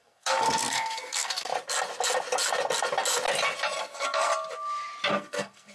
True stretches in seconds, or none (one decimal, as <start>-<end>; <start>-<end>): 1.5-3.8; 4.3-5.1